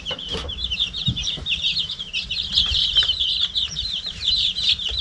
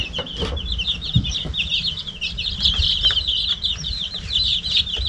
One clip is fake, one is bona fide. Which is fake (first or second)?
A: first